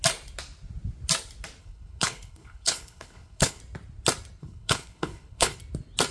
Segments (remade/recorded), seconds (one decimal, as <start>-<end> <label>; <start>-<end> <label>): 0.0-1.6 recorded; 1.6-3.6 remade; 3.6-4.4 recorded; 4.4-5.6 remade; 5.6-6.1 recorded